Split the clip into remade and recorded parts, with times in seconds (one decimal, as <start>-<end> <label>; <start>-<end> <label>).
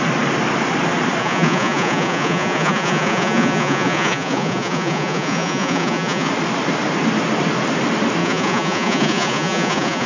0.0-1.2 recorded; 1.2-6.3 remade; 6.3-8.2 recorded; 8.2-10.1 remade